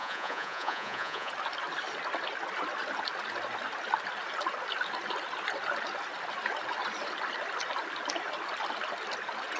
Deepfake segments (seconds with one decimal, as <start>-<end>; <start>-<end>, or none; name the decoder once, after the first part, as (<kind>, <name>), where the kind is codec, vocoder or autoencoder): 0.0-1.3 (vocoder, Vocos)